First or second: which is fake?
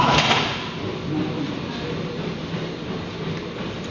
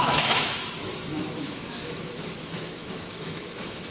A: second